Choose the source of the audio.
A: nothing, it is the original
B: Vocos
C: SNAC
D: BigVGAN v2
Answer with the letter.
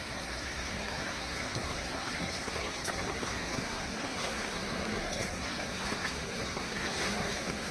C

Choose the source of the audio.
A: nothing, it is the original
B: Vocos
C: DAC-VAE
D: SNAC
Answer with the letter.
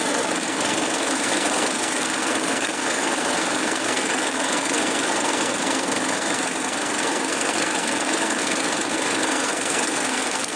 D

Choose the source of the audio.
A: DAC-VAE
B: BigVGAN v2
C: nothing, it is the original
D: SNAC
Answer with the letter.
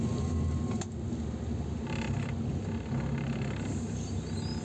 C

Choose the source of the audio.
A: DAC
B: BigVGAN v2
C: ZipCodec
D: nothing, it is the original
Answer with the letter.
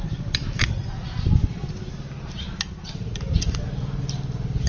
D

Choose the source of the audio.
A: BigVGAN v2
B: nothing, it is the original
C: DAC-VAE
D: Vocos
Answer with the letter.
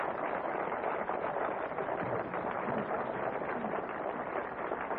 A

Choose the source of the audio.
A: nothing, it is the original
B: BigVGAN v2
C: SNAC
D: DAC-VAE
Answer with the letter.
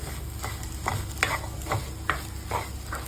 A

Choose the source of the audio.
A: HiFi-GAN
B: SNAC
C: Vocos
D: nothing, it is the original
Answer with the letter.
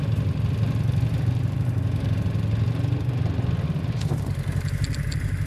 D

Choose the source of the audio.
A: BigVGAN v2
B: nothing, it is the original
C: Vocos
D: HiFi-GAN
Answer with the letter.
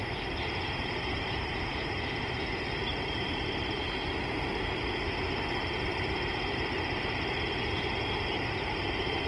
A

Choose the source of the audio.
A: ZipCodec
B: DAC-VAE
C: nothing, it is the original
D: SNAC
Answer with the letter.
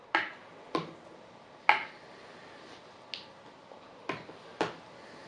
C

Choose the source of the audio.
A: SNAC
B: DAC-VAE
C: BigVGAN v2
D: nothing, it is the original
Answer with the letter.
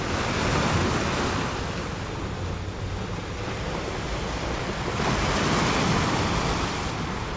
D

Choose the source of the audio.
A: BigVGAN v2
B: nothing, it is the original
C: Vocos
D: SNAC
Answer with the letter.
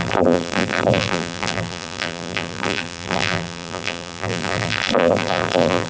A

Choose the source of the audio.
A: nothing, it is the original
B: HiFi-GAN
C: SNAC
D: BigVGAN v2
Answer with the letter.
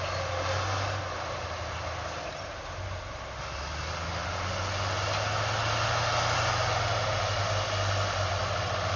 A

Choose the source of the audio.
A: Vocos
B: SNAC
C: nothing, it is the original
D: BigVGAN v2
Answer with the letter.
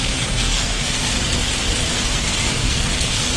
B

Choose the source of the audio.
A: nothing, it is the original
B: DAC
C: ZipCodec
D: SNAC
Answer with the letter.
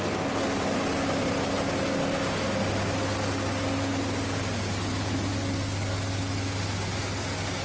A